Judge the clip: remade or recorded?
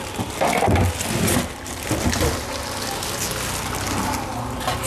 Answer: recorded